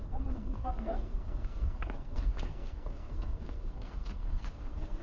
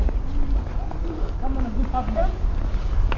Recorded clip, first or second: second